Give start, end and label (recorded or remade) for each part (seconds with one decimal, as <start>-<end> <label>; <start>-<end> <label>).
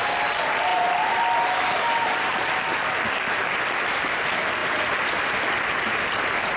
0.0-6.6 recorded